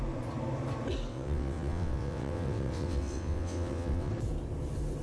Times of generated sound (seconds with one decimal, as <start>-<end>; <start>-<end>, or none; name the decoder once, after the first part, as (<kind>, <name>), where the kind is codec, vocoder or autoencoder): 1.1-4.1 (vocoder, WaveNeXt)